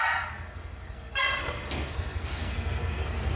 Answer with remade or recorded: remade